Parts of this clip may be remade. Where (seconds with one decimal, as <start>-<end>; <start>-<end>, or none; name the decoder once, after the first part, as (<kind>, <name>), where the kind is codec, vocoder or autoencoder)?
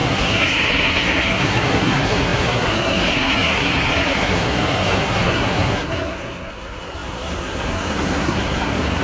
0.0-9.0 (codec, SNAC)